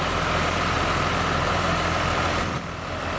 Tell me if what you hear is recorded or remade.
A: recorded